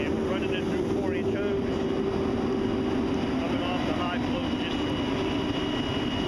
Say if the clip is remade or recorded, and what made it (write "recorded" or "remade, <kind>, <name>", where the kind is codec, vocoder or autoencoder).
recorded